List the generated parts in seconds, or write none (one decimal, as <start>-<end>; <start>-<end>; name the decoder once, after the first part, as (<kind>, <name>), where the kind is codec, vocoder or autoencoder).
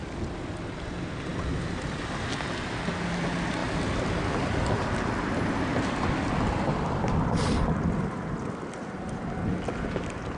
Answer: 1.3-2.5 (vocoder, BigVGAN v2); 3.6-4.8; 5.7-8.7